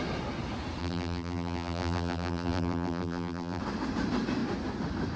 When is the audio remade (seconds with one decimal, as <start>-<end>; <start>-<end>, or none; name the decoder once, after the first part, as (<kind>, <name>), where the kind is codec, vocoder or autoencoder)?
0.8-3.6 (vocoder, BigVGAN v2)